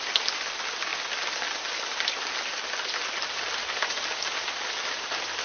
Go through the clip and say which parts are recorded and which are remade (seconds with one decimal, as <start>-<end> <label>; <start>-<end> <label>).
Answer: 0.0-5.4 recorded